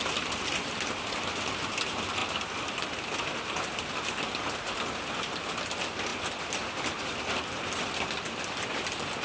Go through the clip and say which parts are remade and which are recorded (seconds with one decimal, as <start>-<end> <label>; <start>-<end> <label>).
0.0-2.2 recorded; 2.2-3.0 remade; 3.0-9.2 recorded